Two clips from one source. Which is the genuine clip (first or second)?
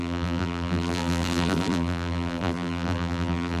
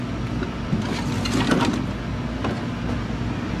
second